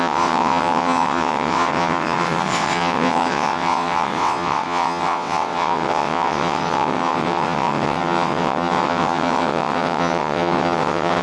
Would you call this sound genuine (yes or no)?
no